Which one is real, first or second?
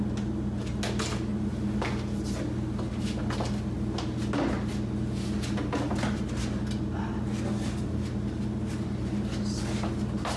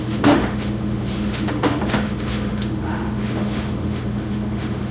first